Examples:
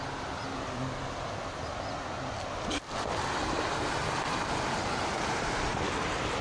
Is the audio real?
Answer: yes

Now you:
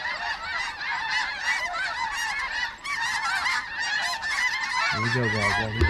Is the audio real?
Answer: yes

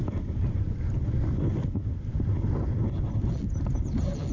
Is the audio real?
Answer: yes